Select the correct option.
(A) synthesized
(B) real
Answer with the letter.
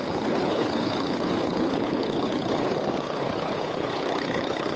A